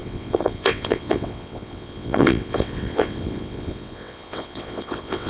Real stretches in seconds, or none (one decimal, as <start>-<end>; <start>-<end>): none